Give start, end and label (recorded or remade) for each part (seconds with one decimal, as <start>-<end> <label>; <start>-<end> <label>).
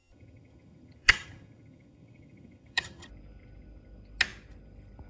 0.0-3.1 remade; 3.1-5.1 recorded